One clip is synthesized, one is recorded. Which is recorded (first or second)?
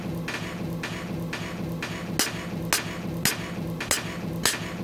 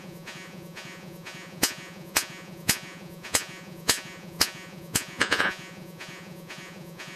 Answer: first